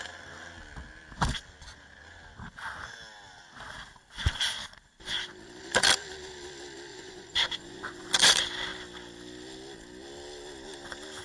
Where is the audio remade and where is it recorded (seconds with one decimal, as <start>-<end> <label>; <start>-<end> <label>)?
0.0-6.9 recorded; 6.9-8.1 remade; 8.1-11.2 recorded